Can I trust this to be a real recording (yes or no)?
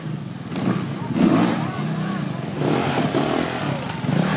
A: yes